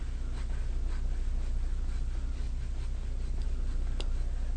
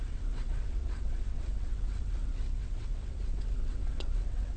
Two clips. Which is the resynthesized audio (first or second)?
second